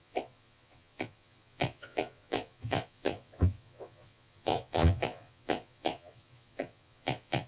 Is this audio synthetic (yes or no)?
yes